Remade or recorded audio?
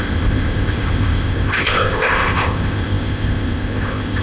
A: remade